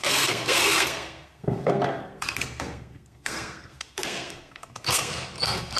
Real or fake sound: fake